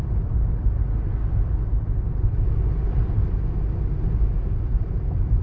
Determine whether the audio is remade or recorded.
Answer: recorded